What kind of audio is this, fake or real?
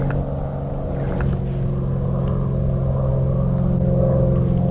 real